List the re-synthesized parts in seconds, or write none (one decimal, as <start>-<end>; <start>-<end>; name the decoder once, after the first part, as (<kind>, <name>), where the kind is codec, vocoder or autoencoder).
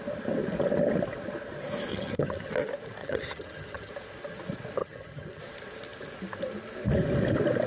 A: 1.9-2.5 (vocoder, HiFi-GAN); 3.0-3.9; 4.8-5.4